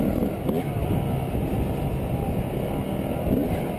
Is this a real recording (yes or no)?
yes